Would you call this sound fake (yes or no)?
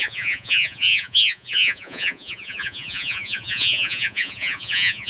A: yes